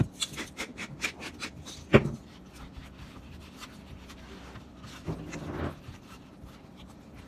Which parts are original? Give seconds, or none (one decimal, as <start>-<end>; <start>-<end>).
0.0-5.9; 6.6-7.3